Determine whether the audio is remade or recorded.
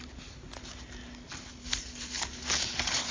recorded